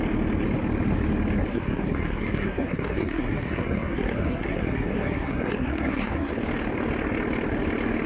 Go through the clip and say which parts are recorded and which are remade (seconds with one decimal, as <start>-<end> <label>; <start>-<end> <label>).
0.0-1.5 recorded; 1.5-6.3 remade; 6.3-8.1 recorded